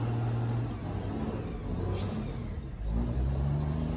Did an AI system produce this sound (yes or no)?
no